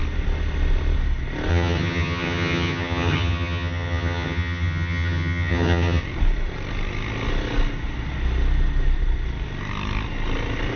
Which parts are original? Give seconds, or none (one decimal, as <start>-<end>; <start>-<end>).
0.0-1.5; 6.0-10.8

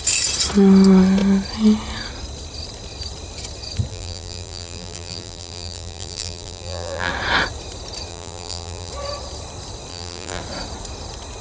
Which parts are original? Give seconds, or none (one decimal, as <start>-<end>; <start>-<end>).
0.0-3.9; 7.1-8.1; 8.9-9.9; 10.4-11.4

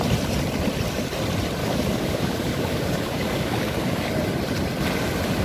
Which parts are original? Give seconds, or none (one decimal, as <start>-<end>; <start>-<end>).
0.0-1.6; 4.1-5.4

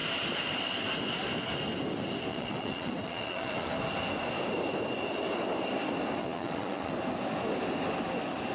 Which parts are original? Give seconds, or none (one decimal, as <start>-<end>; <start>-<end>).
0.0-2.3; 3.7-6.2; 6.9-8.5

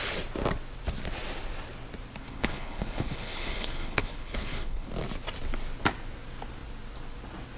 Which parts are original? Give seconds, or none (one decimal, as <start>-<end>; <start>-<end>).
0.0-2.2; 4.9-7.6

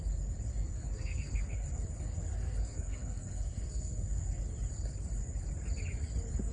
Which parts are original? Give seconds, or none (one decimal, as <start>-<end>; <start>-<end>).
0.0-0.5; 4.4-6.5